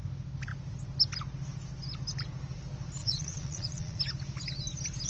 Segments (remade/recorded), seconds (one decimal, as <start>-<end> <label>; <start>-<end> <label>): 0.0-3.0 recorded; 3.0-4.0 remade; 4.0-5.1 recorded